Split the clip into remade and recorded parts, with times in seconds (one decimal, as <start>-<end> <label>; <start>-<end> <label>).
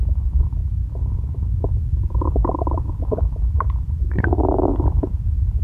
0.0-0.6 remade; 0.6-1.9 recorded; 1.9-5.6 remade